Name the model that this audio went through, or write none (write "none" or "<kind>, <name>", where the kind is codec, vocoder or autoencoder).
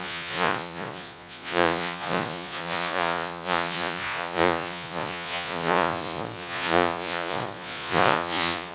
vocoder, Vocos